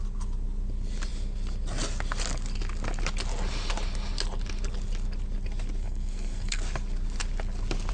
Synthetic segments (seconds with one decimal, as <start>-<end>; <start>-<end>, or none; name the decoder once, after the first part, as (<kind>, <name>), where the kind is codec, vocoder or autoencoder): 5.8-6.6 (codec, SNAC)